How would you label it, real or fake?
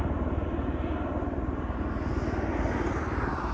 real